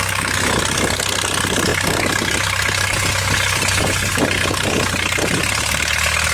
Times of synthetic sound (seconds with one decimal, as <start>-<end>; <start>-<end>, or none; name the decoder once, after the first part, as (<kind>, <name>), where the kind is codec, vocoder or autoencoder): none